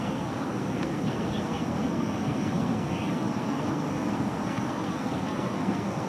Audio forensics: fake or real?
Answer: fake